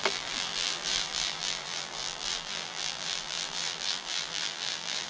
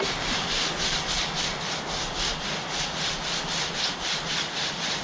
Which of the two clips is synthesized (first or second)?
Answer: first